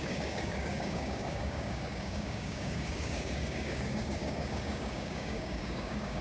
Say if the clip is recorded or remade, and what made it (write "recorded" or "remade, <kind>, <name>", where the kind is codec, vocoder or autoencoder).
remade, codec, DAC